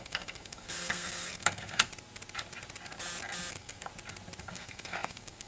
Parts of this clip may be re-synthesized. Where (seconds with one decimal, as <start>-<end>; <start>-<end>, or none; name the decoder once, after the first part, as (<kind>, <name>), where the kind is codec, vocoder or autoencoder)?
0.0-1.9 (codec, SNAC); 3.5-3.9; 4.4-5.5